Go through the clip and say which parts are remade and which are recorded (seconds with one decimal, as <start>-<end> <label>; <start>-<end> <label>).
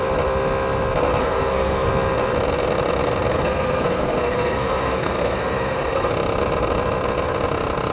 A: 0.0-1.2 recorded; 1.2-1.9 remade; 1.9-3.3 recorded; 3.3-6.1 remade; 6.1-7.9 recorded